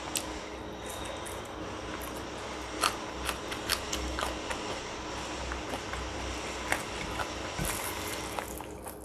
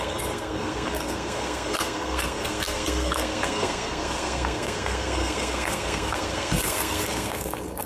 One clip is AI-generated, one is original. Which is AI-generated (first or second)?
second